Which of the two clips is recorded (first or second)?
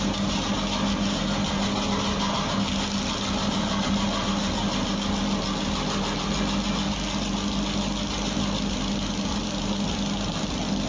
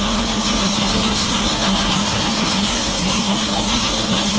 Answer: first